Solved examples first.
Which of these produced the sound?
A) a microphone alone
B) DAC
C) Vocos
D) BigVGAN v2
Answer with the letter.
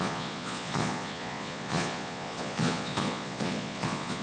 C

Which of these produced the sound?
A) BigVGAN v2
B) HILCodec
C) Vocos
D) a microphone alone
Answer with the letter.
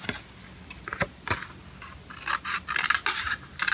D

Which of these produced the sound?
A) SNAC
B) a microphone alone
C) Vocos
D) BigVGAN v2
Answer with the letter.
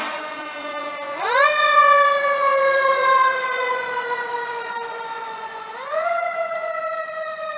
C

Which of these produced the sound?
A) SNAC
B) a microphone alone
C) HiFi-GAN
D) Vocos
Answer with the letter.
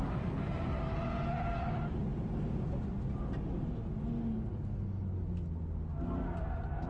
B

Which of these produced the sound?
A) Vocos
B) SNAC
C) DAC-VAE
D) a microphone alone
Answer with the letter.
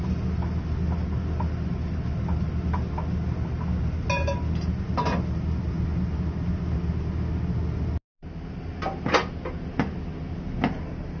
D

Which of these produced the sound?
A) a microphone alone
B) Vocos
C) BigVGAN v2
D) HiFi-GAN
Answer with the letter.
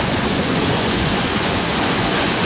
B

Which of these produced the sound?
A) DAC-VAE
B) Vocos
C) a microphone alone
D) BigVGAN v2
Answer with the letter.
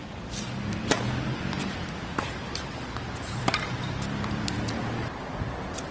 C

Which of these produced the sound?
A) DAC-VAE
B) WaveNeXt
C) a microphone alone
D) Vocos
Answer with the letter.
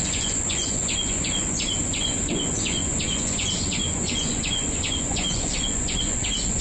D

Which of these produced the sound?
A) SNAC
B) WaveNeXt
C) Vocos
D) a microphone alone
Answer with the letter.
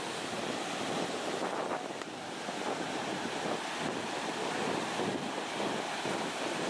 D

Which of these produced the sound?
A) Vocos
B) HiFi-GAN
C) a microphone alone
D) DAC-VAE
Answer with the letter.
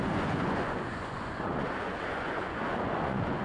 A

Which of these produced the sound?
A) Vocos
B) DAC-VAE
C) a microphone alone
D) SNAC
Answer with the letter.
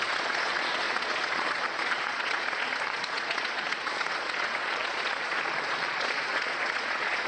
A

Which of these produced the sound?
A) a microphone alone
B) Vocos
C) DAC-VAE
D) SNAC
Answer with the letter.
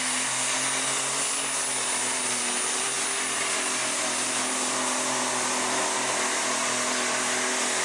A